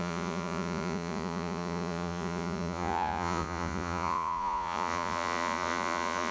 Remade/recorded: remade